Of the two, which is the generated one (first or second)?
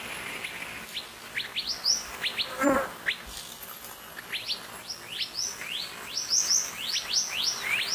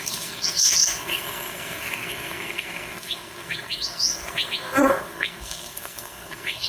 second